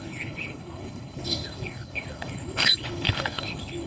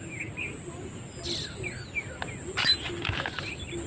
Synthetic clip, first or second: first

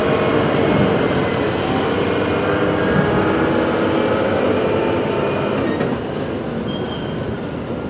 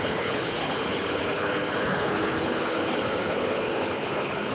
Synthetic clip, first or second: second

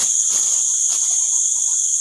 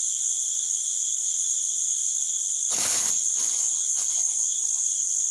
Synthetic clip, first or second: second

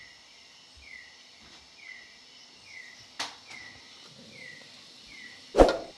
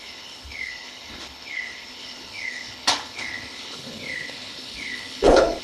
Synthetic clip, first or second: second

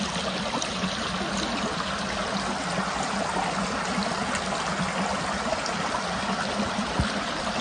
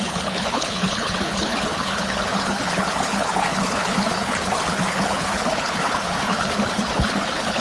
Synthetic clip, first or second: second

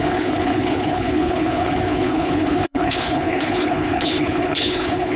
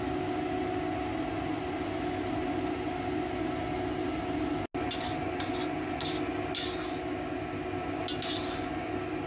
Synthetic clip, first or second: first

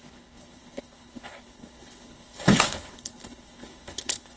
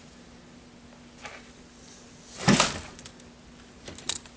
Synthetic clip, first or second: first